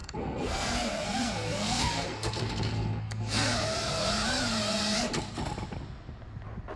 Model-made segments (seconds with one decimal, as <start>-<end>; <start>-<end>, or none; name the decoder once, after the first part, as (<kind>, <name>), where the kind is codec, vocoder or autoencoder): 0.0-4.1 (codec, SNAC)